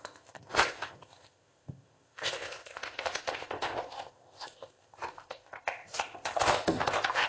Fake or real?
fake